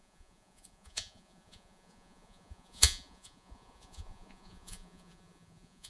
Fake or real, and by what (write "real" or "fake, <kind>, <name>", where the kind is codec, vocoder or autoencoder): fake, vocoder, Vocos